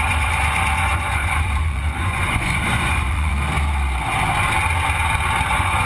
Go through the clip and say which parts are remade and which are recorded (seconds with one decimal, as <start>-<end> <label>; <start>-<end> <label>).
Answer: 0.0-3.3 remade; 3.3-5.5 recorded; 5.5-5.9 remade